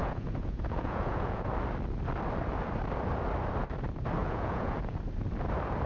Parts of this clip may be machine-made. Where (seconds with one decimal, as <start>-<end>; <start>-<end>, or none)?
0.0-1.5; 4.2-5.0